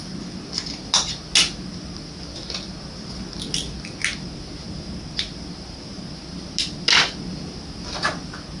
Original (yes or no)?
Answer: yes